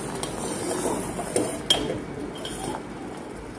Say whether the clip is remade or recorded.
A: recorded